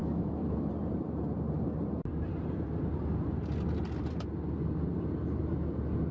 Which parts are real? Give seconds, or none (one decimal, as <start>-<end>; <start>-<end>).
0.7-6.1